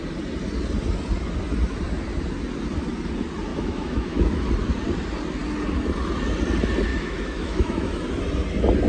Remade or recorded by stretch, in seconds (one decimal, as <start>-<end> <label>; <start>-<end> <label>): 0.0-3.5 recorded; 3.5-4.5 remade; 4.5-6.9 recorded; 6.9-8.0 remade; 8.0-8.9 recorded